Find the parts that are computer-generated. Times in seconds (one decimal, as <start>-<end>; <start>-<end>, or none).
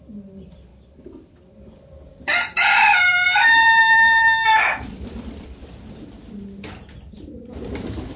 0.7-5.6